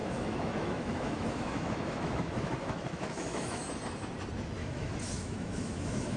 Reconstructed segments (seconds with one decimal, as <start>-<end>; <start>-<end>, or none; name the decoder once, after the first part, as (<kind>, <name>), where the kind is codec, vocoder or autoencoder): 0.0-3.7 (autoencoder, DAC-VAE); 4.6-6.2